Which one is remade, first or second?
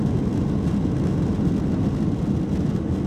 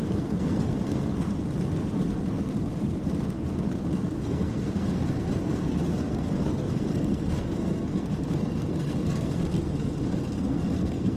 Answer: second